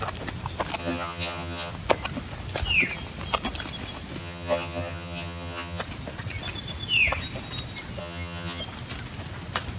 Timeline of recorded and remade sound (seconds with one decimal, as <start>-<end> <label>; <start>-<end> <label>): 0.0-0.8 recorded; 0.8-1.7 remade; 1.7-4.2 recorded; 4.2-5.8 remade; 5.8-8.0 recorded; 8.0-8.6 remade; 8.6-9.8 recorded